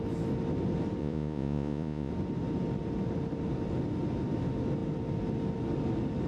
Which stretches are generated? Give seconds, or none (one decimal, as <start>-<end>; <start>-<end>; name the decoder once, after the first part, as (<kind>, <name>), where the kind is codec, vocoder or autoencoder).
1.0-2.1 (vocoder, Vocos)